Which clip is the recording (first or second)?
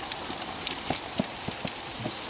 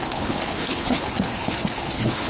first